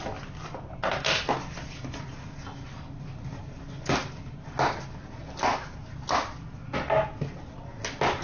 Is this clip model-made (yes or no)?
no